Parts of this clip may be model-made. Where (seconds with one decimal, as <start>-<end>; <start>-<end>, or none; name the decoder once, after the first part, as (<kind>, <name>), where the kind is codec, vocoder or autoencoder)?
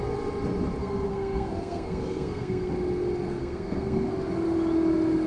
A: 0.8-2.7 (codec, SNAC); 3.4-4.1